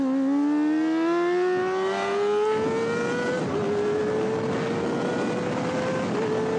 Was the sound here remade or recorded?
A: recorded